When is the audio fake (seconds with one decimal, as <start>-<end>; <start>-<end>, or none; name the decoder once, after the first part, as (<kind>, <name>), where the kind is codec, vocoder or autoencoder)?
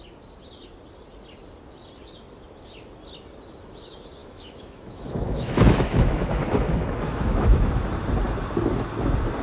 4.2-7.9 (autoencoder, DAC-VAE)